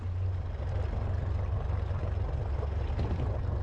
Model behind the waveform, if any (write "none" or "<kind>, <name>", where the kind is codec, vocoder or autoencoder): none